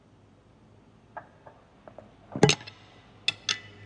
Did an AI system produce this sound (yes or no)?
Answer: no